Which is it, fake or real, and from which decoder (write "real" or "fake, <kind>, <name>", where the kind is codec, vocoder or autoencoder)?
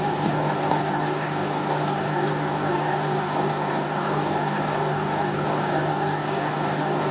fake, codec, DAC